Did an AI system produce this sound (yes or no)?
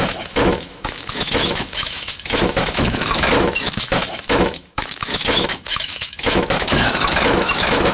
yes